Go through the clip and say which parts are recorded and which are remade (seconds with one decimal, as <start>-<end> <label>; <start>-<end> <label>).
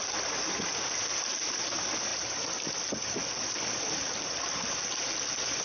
0.0-2.1 recorded; 2.1-5.6 remade